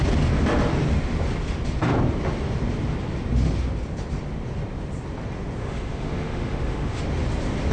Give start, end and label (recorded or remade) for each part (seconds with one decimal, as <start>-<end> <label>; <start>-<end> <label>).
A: 0.0-5.6 recorded; 5.6-7.0 remade; 7.0-7.7 recorded

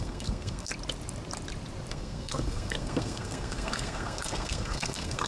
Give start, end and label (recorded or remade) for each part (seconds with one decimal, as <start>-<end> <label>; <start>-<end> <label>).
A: 0.0-0.7 remade; 0.7-1.9 recorded; 1.9-5.3 remade

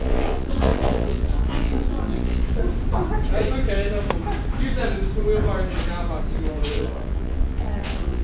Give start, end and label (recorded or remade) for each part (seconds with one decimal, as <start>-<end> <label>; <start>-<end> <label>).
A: 0.0-2.6 remade; 2.6-6.7 recorded; 6.7-8.2 remade

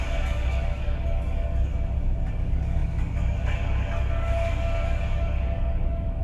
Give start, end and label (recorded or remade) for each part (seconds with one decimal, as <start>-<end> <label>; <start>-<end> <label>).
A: 0.0-1.7 remade; 1.7-2.3 recorded; 2.3-6.2 remade

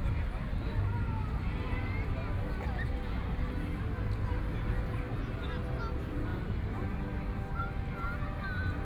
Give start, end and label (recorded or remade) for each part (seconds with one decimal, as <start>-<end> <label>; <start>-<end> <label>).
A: 0.0-8.8 recorded

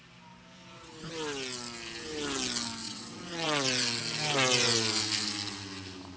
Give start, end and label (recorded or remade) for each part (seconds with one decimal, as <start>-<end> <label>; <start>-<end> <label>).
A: 0.0-2.8 recorded; 2.8-4.0 remade; 4.0-6.2 recorded